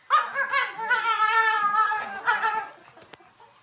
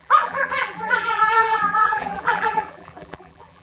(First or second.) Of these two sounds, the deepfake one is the second